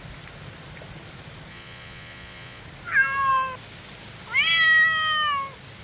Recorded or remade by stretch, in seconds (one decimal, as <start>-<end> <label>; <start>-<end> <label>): 0.0-1.5 recorded; 1.5-2.6 remade; 2.6-5.8 recorded